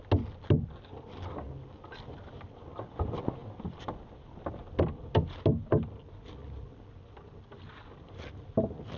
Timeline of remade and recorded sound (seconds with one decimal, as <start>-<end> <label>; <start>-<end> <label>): 0.0-9.0 recorded